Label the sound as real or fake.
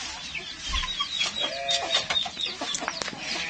real